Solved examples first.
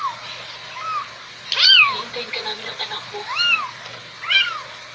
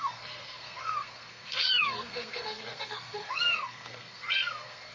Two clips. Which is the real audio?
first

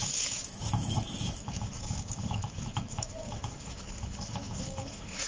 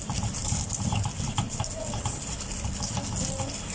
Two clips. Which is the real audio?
second